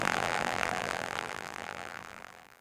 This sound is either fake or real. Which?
fake